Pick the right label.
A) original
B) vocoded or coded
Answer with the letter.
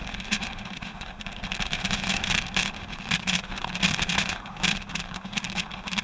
B